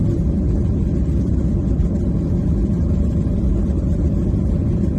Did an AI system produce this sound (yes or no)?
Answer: yes